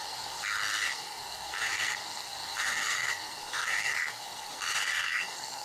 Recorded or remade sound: remade